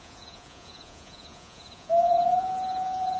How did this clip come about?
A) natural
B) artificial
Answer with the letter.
B